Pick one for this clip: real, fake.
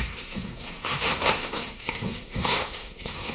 fake